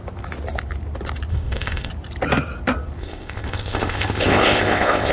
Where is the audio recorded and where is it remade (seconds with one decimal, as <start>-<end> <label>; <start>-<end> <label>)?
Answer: 0.0-1.3 recorded; 1.3-1.9 remade; 1.9-3.0 recorded; 3.0-5.1 remade